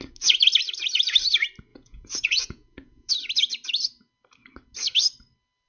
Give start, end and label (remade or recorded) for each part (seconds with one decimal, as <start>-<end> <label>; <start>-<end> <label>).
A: 0.0-1.7 recorded; 1.7-3.1 remade; 3.1-5.7 recorded